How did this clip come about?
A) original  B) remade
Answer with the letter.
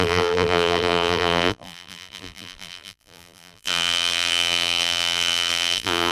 B